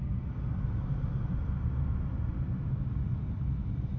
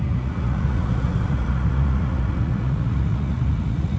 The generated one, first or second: second